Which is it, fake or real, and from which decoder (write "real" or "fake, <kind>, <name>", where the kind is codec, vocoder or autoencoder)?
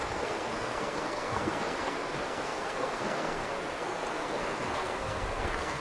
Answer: fake, codec, SNAC